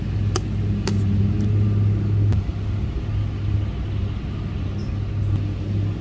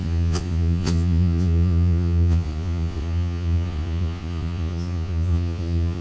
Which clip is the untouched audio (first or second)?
first